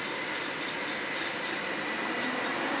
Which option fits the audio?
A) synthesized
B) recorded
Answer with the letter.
B